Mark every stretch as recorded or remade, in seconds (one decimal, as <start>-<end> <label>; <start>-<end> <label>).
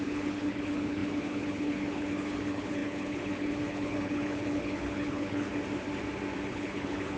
0.0-5.5 remade; 5.5-6.5 recorded; 6.5-7.2 remade